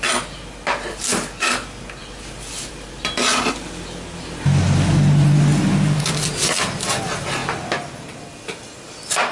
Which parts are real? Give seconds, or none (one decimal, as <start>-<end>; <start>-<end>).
0.0-9.3